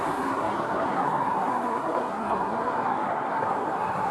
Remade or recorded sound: remade